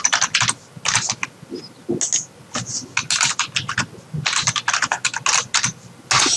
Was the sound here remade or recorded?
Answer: recorded